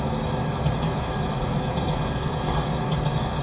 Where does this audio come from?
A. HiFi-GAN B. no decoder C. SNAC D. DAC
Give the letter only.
D